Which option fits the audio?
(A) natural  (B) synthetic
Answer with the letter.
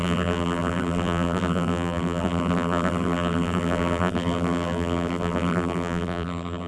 B